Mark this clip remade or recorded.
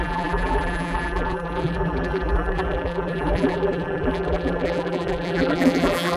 remade